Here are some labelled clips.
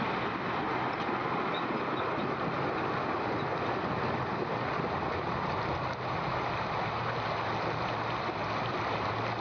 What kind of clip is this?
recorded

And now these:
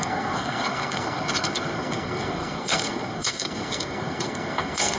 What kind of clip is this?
remade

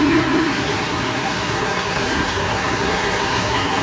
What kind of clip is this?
remade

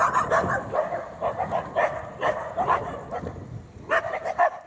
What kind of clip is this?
recorded